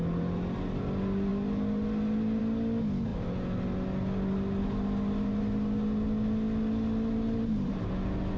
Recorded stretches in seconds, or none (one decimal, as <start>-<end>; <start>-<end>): 0.0-8.4